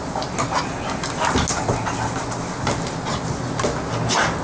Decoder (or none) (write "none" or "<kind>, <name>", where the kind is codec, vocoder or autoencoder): none